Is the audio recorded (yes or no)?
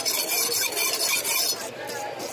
yes